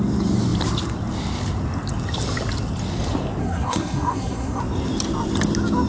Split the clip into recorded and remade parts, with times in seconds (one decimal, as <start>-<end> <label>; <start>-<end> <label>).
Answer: 0.0-3.4 recorded; 3.4-4.6 remade; 4.6-5.9 recorded